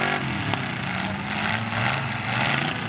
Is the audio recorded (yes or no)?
yes